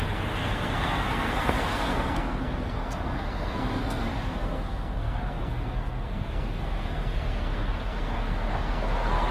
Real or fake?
fake